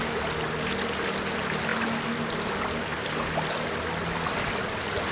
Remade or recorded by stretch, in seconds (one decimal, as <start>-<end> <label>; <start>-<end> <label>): 0.0-5.1 recorded